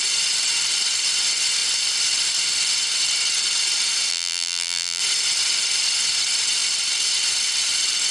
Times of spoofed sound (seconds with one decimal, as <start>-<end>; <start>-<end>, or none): 4.1-5.0